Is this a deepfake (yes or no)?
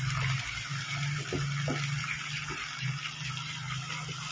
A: no